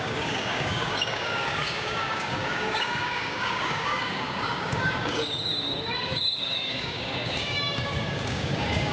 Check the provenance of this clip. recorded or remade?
remade